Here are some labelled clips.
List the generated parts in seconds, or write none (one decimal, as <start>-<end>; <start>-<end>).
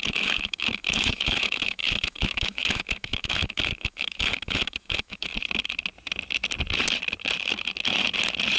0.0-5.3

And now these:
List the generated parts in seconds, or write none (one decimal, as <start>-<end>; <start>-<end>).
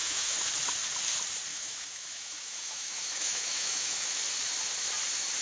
0.0-0.5; 1.5-4.2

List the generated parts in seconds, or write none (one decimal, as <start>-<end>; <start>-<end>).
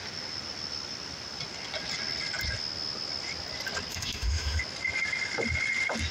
3.9-4.6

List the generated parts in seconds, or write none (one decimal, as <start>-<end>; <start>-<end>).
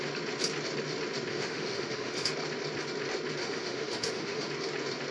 1.3-2.3; 3.4-4.5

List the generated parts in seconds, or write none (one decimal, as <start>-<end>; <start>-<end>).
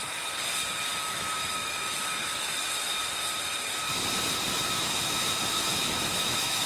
0.9-2.6; 4.5-6.7